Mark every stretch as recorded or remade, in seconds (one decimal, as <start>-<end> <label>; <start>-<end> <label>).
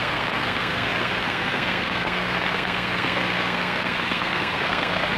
0.0-5.2 remade